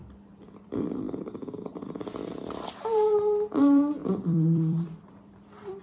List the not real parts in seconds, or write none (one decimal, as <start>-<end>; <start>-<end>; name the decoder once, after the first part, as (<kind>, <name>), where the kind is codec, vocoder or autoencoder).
0.0-5.8 (vocoder, BigVGAN v2)